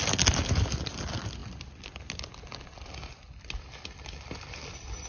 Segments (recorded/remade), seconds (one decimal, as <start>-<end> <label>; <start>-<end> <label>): 0.0-5.1 recorded